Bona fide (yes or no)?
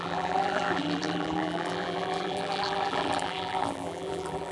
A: no